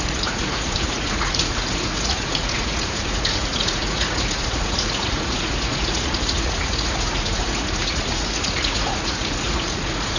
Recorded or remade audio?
remade